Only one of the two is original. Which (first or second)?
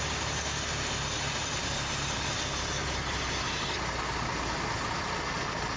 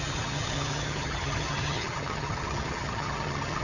first